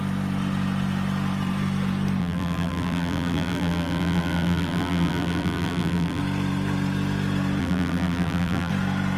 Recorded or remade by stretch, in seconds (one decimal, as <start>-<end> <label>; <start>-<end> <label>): 0.0-2.2 recorded; 2.2-6.2 remade; 6.2-7.6 recorded; 7.6-8.7 remade; 8.7-9.2 recorded